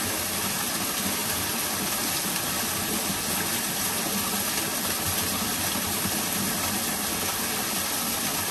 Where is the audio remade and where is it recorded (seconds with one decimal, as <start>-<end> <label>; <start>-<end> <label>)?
0.0-8.5 recorded